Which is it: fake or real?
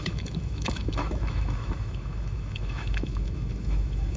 fake